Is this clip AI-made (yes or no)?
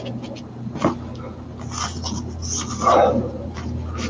no